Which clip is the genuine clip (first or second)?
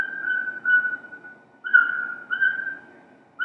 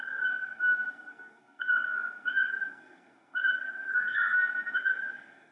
first